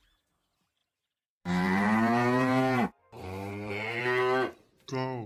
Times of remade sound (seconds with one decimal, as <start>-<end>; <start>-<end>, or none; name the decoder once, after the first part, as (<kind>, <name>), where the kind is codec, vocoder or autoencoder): 0.8-4.0 (vocoder, BigVGAN v2)